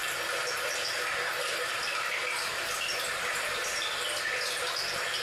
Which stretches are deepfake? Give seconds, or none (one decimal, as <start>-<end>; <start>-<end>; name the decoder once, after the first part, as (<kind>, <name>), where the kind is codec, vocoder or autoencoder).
none